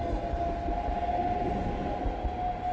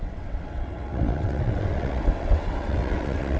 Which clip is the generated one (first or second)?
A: second